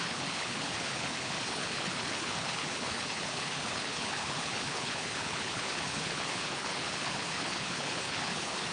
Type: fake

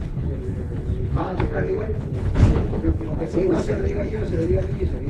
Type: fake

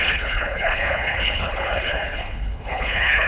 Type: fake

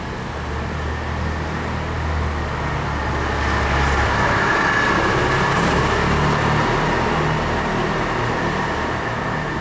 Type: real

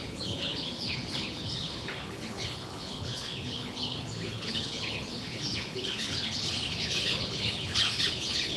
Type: fake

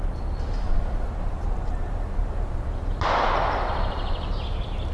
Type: real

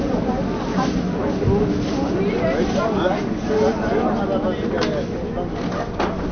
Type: real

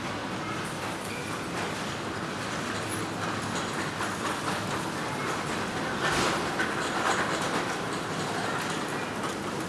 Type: real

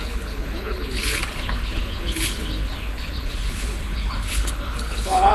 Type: fake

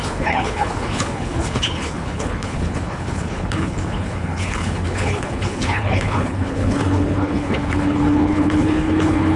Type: fake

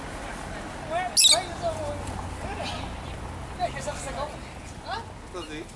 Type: real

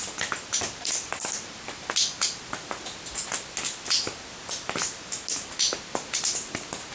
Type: real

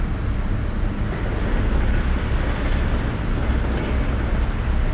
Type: real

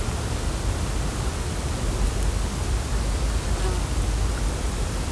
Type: real